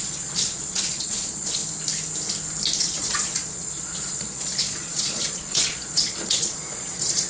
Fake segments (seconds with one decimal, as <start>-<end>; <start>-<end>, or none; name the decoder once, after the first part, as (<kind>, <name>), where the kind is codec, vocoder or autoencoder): 0.0-1.6 (vocoder, Vocos); 2.8-7.3